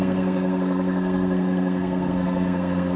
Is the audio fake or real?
fake